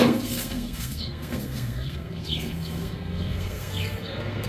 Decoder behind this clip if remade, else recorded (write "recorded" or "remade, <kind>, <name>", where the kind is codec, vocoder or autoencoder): remade, codec, SNAC